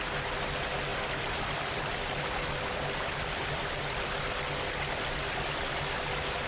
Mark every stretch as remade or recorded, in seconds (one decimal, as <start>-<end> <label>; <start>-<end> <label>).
0.0-0.9 recorded; 0.9-4.8 remade; 4.8-6.5 recorded